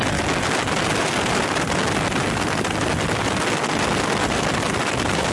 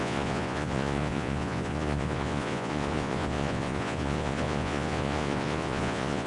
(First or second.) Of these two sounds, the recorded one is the first